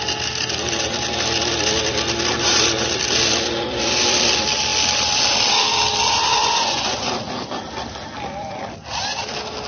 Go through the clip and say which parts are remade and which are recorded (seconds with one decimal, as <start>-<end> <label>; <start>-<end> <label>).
0.0-6.4 recorded; 6.4-7.1 remade; 7.1-9.7 recorded